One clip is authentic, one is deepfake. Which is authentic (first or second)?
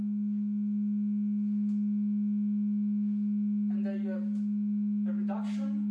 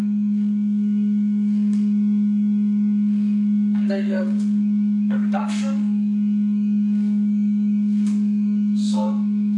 first